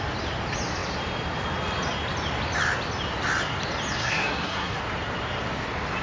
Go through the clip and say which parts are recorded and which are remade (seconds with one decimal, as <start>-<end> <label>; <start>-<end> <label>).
0.0-4.0 recorded; 4.0-4.8 remade; 4.8-6.0 recorded